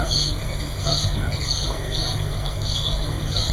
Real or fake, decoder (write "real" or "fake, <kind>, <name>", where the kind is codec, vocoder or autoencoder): fake, codec, SNAC